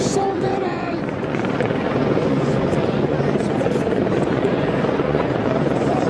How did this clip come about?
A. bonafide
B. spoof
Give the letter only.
B